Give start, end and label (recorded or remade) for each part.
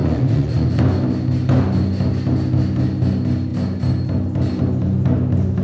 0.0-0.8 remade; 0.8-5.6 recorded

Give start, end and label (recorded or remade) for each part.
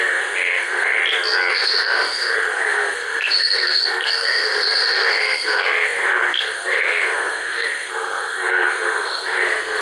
0.0-1.0 remade; 1.0-1.5 recorded; 1.5-9.8 remade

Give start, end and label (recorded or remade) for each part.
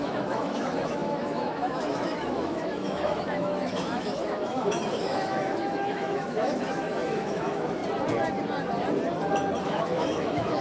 0.0-7.8 remade; 7.8-9.6 recorded; 9.6-10.6 remade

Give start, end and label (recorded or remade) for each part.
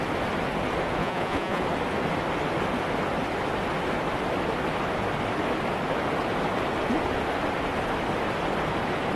0.0-1.0 recorded; 1.0-1.6 remade; 1.6-9.2 recorded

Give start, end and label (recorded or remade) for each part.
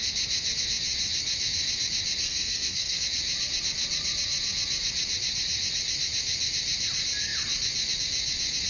0.0-2.2 recorded; 2.2-3.0 remade; 3.0-8.7 recorded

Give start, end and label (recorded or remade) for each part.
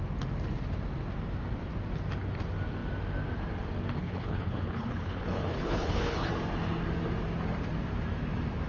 0.0-4.0 recorded; 4.0-6.3 remade; 6.3-8.7 recorded